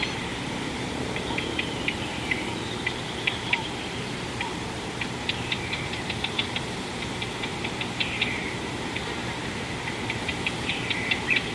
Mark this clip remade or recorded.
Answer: remade